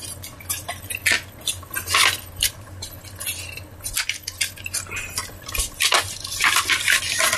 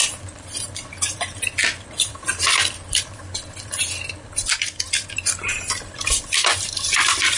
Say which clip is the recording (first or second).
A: first